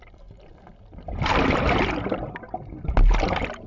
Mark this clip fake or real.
real